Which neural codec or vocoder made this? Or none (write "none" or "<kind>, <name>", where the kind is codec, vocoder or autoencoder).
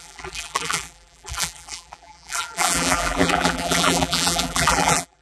vocoder, BigVGAN v2